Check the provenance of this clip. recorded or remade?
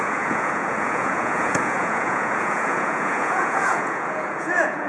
remade